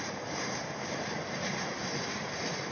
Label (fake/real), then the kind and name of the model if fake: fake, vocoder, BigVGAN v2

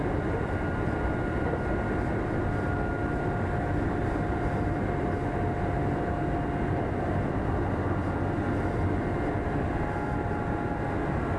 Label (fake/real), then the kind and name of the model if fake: real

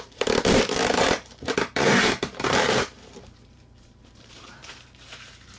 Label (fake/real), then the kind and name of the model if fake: fake, vocoder, BigVGAN v2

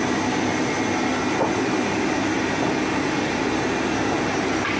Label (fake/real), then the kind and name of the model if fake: real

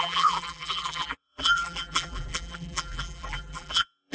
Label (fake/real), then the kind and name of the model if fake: fake, vocoder, BigVGAN v2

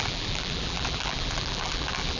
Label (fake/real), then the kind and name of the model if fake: fake, vocoder, BigVGAN v2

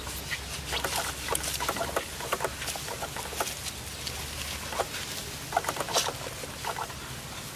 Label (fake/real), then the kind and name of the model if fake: real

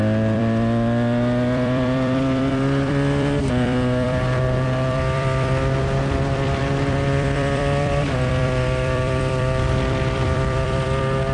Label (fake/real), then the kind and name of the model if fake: fake, vocoder, BigVGAN v2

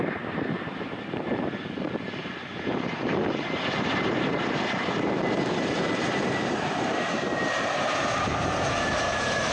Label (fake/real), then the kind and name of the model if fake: fake, vocoder, BigVGAN v2